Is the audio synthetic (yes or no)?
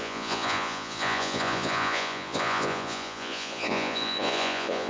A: yes